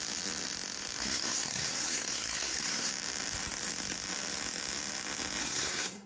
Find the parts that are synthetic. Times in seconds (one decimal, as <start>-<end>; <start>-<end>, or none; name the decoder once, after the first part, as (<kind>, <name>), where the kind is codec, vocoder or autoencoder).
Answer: 1.0-2.9 (codec, SNAC); 5.4-6.1